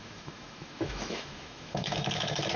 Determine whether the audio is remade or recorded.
remade